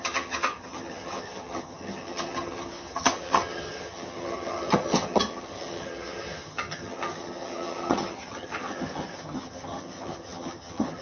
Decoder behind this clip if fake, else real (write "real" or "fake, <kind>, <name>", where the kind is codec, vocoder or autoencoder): fake, vocoder, HiFi-GAN